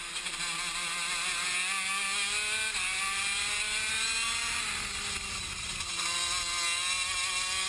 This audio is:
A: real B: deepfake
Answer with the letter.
A